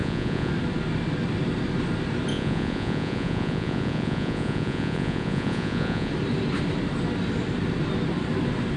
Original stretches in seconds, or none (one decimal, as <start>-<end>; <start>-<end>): 0.5-2.3; 6.1-8.8